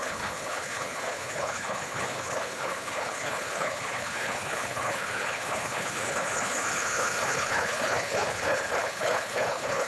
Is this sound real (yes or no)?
no